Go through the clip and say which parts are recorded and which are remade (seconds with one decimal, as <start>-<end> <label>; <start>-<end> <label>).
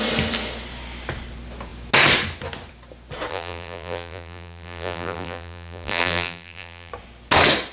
0.0-3.3 recorded; 3.3-6.9 remade; 6.9-7.7 recorded